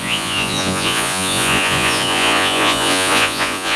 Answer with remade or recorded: remade